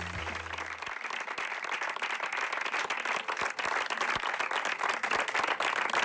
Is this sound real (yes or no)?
yes